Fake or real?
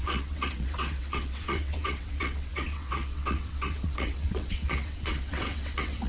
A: fake